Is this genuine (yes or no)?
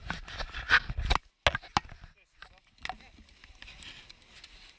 yes